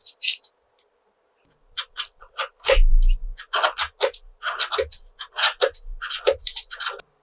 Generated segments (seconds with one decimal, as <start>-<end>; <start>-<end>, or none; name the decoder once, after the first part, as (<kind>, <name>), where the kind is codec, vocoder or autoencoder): 1.9-2.9 (vocoder, BigVGAN v2); 6.2-7.2